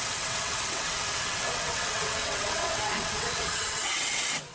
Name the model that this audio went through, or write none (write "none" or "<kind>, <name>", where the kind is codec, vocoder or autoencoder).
vocoder, WaveNeXt